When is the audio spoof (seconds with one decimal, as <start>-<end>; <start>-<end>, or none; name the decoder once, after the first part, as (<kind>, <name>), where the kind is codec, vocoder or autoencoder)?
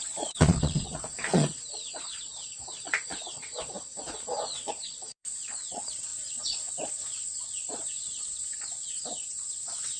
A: 0.0-10.0 (vocoder, Vocos)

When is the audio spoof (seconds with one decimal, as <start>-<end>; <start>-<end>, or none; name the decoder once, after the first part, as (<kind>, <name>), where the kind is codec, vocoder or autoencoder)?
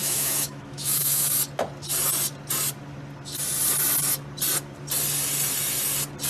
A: 0.0-1.3 (autoencoder, DAC-VAE)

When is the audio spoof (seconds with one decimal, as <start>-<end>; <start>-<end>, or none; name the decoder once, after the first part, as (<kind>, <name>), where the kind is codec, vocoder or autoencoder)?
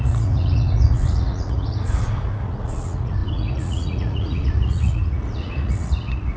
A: 0.0-6.4 (vocoder, Vocos)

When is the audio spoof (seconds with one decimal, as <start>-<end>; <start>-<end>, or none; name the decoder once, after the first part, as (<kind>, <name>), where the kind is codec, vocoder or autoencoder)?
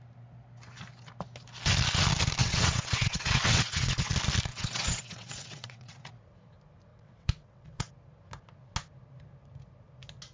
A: 2.4-4.1 (vocoder, WaveNeXt); 4.5-6.1; 6.9-7.9